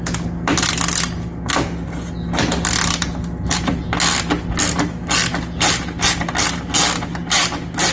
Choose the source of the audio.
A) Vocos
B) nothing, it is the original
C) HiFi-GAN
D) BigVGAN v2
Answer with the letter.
B